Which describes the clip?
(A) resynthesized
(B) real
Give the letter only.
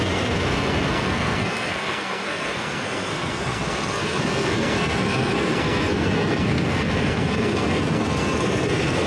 A